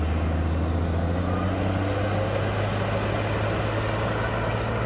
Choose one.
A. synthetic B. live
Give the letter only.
B